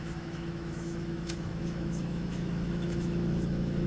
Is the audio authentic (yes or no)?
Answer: no